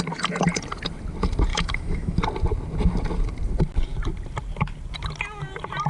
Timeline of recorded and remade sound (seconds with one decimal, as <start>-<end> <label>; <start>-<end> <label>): 0.0-1.5 recorded; 1.5-2.2 remade; 2.2-5.9 recorded